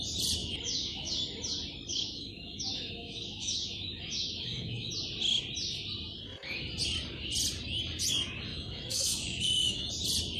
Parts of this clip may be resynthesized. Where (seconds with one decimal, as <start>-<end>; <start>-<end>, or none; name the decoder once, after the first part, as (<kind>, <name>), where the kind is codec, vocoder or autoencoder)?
0.4-1.1 (autoencoder, DAC-VAE); 1.9-4.9; 8.5-9.9